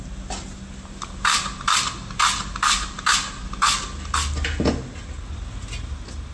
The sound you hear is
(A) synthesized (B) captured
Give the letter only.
B